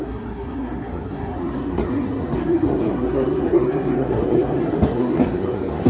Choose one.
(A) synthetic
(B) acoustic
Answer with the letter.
A